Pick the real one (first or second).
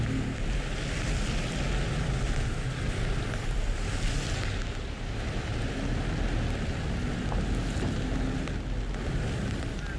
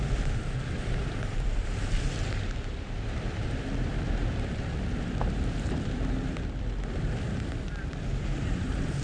first